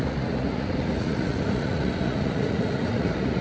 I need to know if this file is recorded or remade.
remade